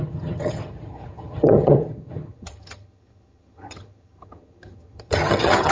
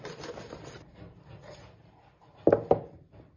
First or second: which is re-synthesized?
first